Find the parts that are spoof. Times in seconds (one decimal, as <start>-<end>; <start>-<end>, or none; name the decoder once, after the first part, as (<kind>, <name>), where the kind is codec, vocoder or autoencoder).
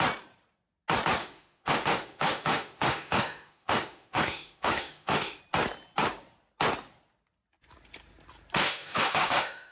1.2-5.4 (autoencoder, DAC-VAE); 8.6-9.7